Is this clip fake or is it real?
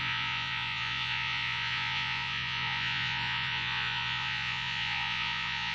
fake